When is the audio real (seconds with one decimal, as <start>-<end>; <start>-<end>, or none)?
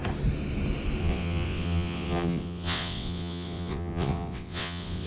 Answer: 0.0-1.0